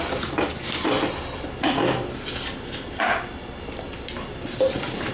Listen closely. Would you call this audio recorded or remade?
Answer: recorded